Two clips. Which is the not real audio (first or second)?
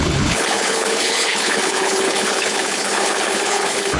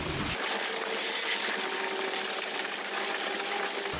first